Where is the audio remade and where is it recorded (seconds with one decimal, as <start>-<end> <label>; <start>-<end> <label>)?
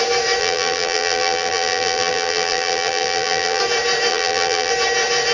0.0-0.4 recorded; 0.4-3.6 remade; 3.6-4.1 recorded; 4.1-4.7 remade; 4.7-5.3 recorded